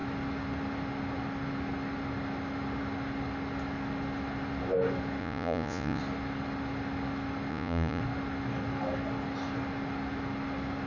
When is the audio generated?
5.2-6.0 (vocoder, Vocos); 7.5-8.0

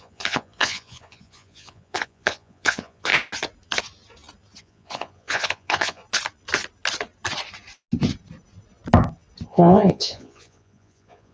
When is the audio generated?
0.0-3.1 (vocoder, Vocos); 4.6-6.0; 9.5-11.3

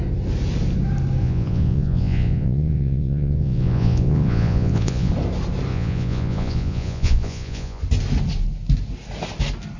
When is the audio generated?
1.2-5.1 (vocoder, Vocos); 5.7-7.8

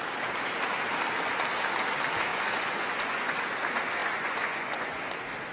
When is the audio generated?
2.3-3.4 (vocoder, Vocos); 4.0-5.0